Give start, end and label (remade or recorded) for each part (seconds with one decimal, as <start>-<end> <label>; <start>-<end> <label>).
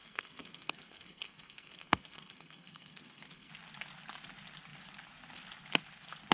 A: 0.0-3.5 remade; 3.5-6.3 recorded